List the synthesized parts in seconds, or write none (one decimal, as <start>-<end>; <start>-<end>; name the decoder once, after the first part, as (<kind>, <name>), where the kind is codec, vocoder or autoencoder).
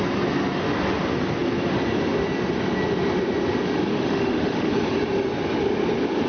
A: 3.9-4.7 (autoencoder, DAC-VAE)